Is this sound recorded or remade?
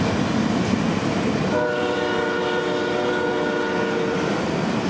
recorded